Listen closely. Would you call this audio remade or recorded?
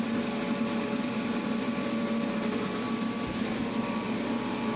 recorded